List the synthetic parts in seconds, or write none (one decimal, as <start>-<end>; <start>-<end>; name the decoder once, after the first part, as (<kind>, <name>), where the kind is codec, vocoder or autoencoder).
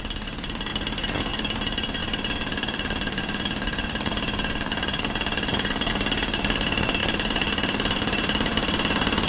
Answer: 0.0-0.7 (vocoder, BigVGAN v2); 1.3-9.3